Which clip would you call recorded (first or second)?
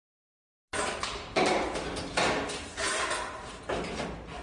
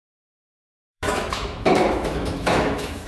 first